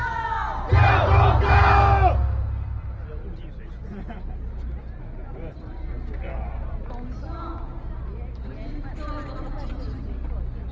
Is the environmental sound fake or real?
real